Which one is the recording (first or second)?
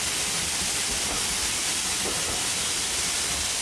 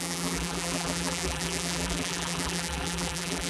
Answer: first